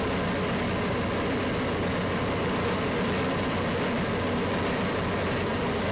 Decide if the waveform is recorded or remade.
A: recorded